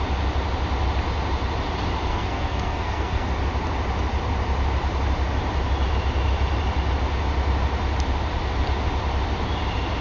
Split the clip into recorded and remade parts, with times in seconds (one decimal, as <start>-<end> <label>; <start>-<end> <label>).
0.0-2.1 recorded; 2.1-3.3 remade; 3.3-10.0 recorded